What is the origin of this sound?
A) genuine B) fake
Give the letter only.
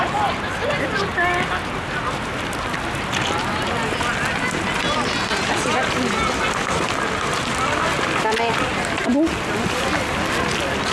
A